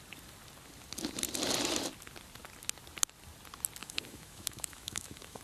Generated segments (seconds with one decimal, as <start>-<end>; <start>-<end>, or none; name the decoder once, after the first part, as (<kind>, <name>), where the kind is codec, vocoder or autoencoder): 3.8-5.4 (autoencoder, DAC-VAE)